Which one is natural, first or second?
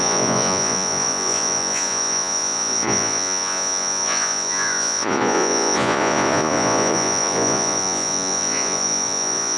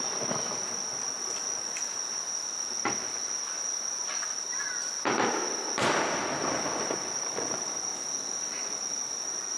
second